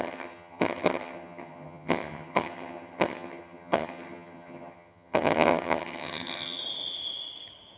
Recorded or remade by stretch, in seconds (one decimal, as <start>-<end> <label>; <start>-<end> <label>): 0.0-6.6 remade; 6.6-7.8 recorded